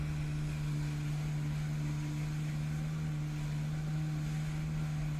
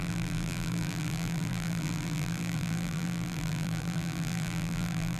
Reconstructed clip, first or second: second